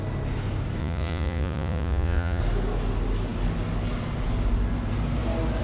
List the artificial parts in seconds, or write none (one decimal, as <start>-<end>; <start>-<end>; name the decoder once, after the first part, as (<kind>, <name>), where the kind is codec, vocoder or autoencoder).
0.8-2.4 (vocoder, Vocos)